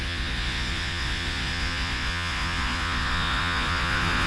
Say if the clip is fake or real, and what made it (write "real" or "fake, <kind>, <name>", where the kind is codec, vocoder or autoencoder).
fake, vocoder, Vocos